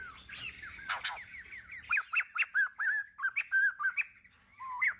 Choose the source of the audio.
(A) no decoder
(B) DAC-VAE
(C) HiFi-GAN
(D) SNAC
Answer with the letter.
A